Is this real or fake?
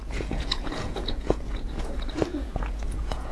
fake